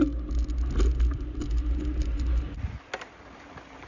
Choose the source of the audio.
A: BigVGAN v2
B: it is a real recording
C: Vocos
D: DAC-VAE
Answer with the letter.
B